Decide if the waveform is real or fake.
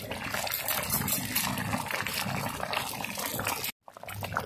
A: real